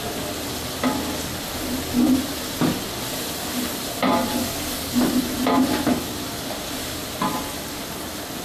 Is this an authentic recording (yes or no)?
yes